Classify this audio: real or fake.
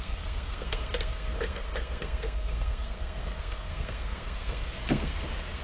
fake